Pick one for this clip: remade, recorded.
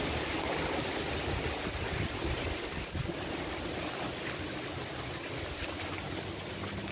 recorded